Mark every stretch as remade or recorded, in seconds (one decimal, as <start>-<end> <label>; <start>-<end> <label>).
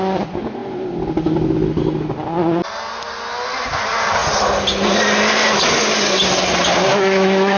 0.0-6.9 recorded; 6.9-7.6 remade